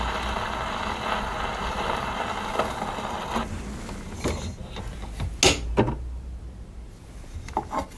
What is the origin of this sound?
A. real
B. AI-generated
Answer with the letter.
A